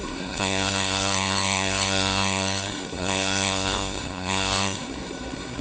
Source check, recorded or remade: remade